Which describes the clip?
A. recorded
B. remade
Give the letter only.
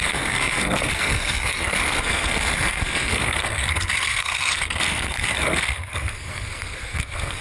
B